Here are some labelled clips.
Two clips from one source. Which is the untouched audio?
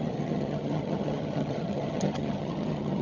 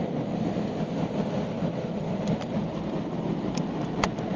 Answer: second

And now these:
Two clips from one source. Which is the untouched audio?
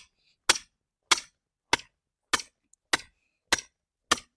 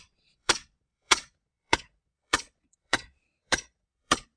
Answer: first